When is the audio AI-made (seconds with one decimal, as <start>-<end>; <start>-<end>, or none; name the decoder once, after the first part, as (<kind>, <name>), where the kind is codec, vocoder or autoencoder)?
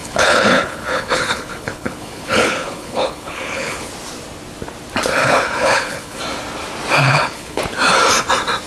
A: 0.0-3.9 (codec, HILCodec); 5.2-6.2; 7.0-7.6